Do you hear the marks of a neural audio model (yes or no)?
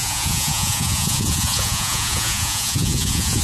yes